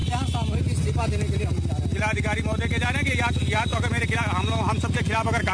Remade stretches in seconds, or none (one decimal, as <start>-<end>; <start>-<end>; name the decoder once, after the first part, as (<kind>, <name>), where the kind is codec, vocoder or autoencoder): none